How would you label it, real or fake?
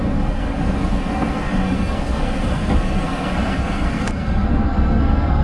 fake